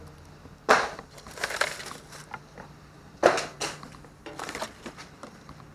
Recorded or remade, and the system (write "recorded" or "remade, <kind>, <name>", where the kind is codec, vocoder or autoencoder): remade, vocoder, BigVGAN v2